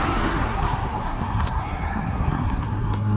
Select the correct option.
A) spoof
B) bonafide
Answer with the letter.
A